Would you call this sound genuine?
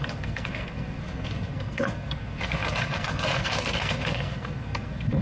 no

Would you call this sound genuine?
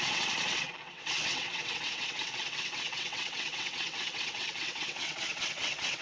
no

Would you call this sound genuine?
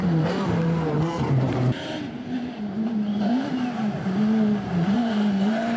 no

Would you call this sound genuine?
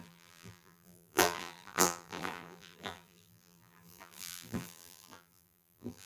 no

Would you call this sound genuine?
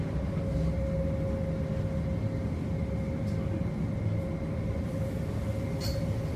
yes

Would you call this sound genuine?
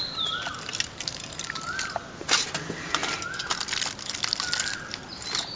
yes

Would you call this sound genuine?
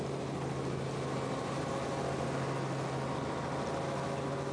yes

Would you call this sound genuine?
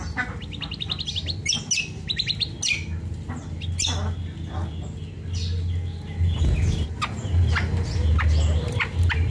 yes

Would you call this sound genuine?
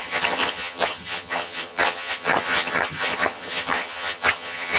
no